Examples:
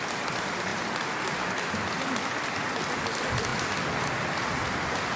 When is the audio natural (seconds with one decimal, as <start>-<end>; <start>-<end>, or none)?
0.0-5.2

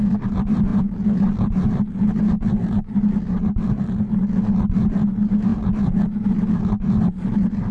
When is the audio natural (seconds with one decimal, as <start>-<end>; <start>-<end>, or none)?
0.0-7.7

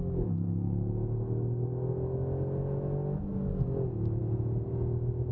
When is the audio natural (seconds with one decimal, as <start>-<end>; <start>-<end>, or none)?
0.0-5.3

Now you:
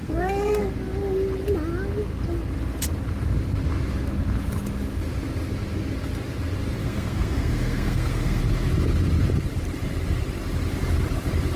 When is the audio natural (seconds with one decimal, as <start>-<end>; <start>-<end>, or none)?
0.7-6.8; 8.4-11.6

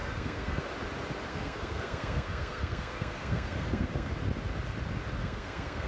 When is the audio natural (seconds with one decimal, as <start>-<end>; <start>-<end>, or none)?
0.6-1.3; 4.1-5.2

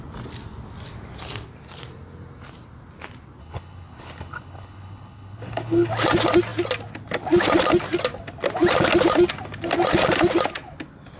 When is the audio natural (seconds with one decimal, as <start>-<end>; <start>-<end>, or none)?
0.0-3.4; 5.9-11.2

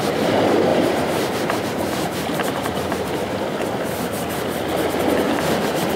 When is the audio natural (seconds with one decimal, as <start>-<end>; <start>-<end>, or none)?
0.0-0.7; 3.1-6.0